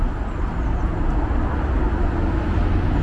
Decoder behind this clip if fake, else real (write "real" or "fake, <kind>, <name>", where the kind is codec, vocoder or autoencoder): real